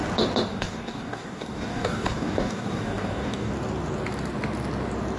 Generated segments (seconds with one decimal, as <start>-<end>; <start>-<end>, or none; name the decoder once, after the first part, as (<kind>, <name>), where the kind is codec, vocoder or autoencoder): 0.5-3.5 (codec, DAC)